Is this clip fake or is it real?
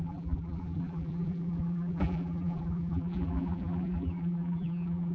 fake